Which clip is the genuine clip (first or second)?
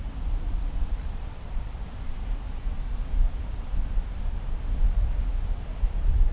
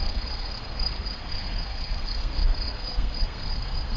first